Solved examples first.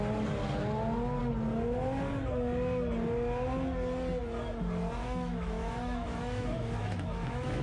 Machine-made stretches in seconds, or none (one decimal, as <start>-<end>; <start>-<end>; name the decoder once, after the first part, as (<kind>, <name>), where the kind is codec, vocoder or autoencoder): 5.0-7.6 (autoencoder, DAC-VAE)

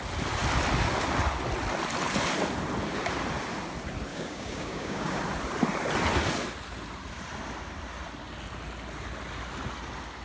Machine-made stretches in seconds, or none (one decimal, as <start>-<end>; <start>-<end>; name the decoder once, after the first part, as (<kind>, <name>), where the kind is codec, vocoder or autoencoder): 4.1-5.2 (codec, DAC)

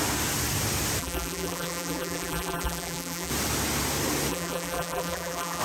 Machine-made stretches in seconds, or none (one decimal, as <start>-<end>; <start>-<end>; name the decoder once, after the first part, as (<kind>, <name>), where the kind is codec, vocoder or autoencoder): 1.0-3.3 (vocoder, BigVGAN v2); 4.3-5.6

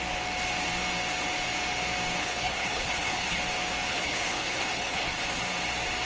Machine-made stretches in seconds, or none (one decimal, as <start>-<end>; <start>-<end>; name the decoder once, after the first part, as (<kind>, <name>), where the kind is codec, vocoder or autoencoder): 2.2-3.4 (codec, HILCodec); 3.9-5.4

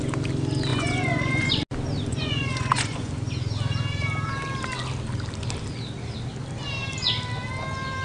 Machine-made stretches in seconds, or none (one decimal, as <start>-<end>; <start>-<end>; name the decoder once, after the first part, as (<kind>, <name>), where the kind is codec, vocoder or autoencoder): 0.7-1.5 (vocoder, Vocos); 2.1-3.1